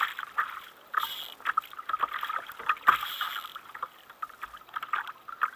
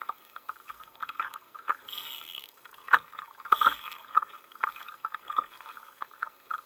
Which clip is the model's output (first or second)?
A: second